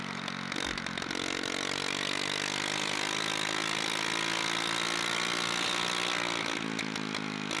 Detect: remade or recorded recorded